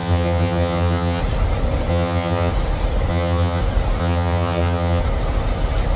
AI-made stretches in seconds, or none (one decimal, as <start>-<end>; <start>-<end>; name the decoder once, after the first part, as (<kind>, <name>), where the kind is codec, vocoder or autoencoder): 0.0-1.2 (vocoder, HiFi-GAN); 1.9-2.5; 3.1-3.6; 4.0-5.0